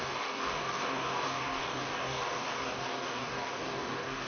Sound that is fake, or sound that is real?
fake